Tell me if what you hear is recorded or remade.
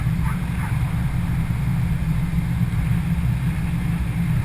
recorded